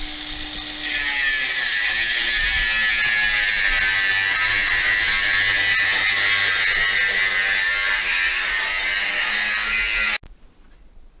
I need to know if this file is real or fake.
real